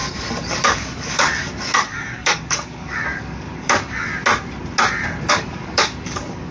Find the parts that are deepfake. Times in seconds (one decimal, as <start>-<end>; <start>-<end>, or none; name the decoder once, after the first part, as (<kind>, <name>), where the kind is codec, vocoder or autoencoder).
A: 0.0-4.1 (codec, DAC); 5.3-6.5